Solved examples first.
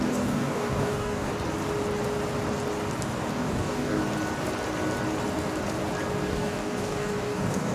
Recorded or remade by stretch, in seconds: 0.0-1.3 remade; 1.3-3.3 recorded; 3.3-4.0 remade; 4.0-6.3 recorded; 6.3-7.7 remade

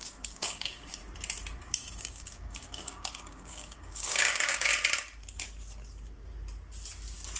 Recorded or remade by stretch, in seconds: 0.0-1.0 remade; 1.0-1.6 recorded; 1.6-4.7 remade; 4.7-7.4 recorded

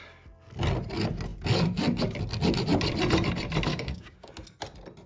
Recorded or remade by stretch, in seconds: 0.0-3.7 recorded; 3.7-4.3 remade; 4.3-5.1 recorded